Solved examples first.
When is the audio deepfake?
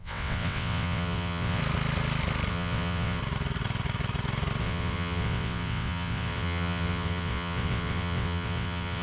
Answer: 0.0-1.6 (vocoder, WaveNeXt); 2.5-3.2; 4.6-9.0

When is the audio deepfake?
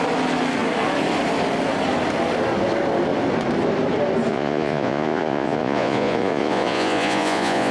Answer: 4.3-7.7 (vocoder, Vocos)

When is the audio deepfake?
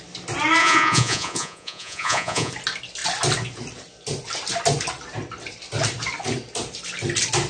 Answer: 0.6-2.5 (vocoder, Vocos)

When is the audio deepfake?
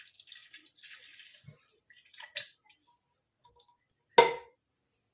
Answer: none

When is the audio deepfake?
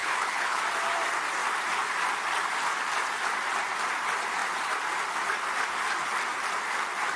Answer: 0.0-0.6 (codec, HILCodec)